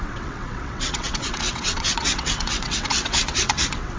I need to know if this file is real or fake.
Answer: fake